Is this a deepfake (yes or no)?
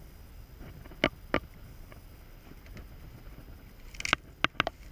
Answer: no